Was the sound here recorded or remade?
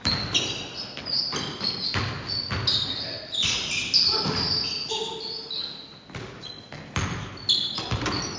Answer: recorded